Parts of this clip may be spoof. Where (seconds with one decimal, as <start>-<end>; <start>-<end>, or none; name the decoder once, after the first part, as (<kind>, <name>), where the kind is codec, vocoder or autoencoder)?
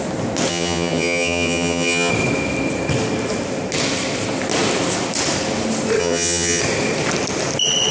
0.5-2.1 (vocoder, HiFi-GAN); 6.0-6.6